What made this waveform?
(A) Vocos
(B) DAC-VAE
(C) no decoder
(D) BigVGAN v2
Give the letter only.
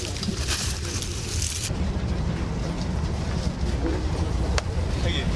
C